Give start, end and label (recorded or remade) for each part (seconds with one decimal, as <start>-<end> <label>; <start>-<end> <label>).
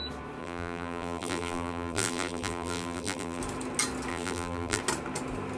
0.0-0.4 recorded; 0.4-3.4 remade; 3.4-4.1 recorded; 4.1-4.8 remade; 4.8-5.6 recorded